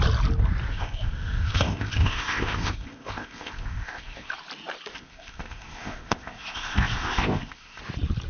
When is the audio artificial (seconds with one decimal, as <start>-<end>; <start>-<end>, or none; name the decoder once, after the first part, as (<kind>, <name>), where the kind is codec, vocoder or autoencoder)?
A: 0.7-4.3 (codec, ZipCodec); 4.9-7.8